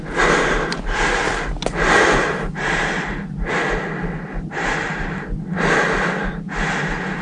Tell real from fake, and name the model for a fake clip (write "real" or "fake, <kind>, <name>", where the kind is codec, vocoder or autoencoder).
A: real